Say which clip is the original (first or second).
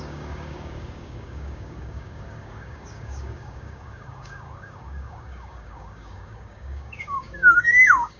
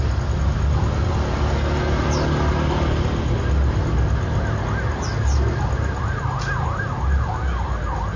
second